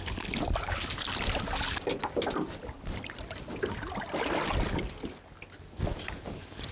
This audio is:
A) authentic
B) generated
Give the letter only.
A